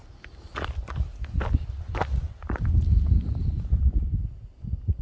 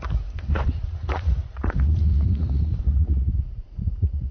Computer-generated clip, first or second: second